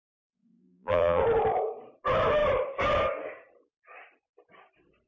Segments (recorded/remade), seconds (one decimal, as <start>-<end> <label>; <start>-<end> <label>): 0.0-0.6 recorded; 0.6-1.2 remade; 1.2-5.1 recorded